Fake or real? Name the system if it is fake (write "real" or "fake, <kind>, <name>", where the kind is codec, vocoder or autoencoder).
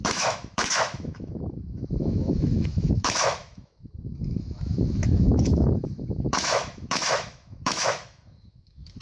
fake, autoencoder, DAC-VAE